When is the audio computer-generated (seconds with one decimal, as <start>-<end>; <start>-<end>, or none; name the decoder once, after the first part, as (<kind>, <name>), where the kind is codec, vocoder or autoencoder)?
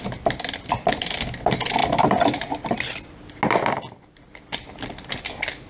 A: none